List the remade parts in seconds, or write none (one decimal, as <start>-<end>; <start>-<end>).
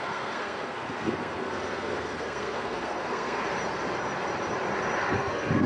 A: 0.0-3.4; 5.0-5.7